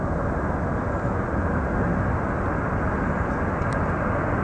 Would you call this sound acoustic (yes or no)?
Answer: yes